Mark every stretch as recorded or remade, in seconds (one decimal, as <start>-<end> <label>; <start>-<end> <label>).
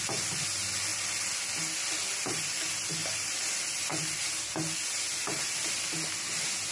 0.0-3.0 recorded; 3.0-5.9 remade; 5.9-6.7 recorded